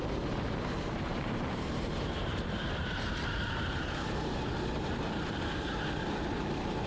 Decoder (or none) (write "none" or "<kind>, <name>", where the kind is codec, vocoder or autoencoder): vocoder, BigVGAN v2